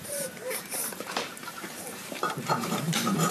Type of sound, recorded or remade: remade